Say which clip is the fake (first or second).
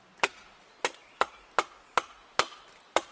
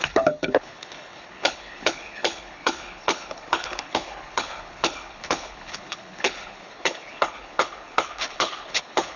second